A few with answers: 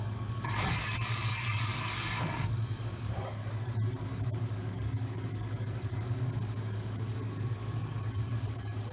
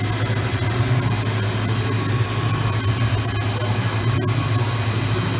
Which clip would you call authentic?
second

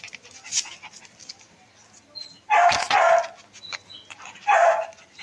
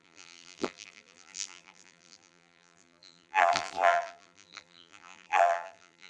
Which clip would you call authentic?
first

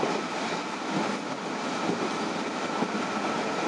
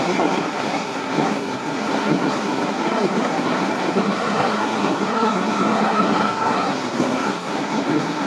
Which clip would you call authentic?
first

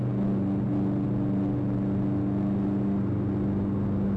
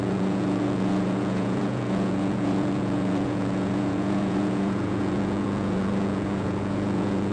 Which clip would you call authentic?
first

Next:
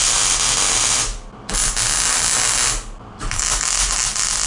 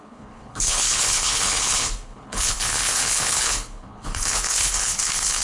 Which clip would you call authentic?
first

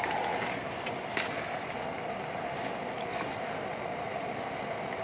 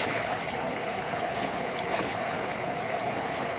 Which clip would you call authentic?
first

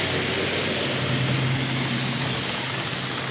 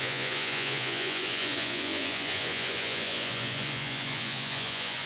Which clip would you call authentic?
first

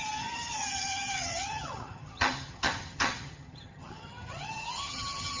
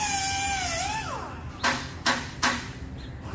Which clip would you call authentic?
second